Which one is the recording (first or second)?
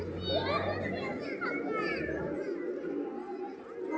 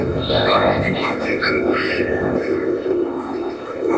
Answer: first